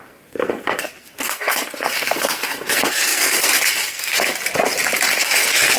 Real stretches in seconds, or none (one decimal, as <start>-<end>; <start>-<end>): 4.3-5.2